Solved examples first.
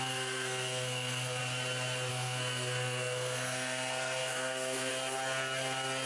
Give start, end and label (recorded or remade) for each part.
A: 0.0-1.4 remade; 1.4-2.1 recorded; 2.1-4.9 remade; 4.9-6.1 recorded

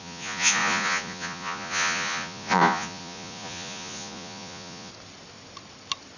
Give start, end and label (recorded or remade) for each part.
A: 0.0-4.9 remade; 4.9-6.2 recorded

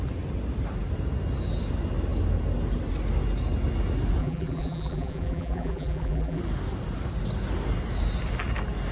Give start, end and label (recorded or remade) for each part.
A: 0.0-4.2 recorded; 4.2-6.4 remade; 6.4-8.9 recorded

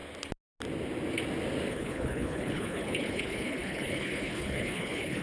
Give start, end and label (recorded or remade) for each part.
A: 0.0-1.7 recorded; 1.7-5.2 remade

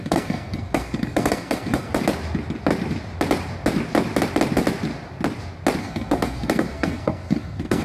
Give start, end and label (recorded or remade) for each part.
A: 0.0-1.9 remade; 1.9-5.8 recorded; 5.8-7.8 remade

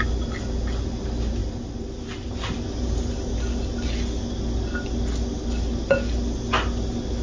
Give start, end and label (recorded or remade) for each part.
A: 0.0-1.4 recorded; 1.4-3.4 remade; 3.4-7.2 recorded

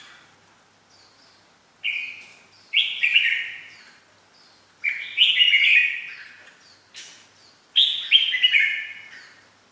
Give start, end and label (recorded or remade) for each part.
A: 0.0-9.7 recorded

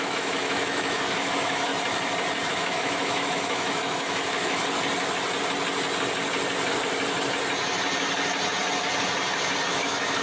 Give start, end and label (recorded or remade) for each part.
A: 0.0-1.7 remade; 1.7-2.5 recorded; 2.5-4.6 remade; 4.6-9.7 recorded; 9.7-10.2 remade